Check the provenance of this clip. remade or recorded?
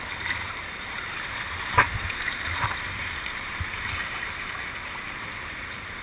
remade